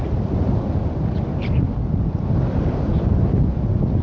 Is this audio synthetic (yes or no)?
no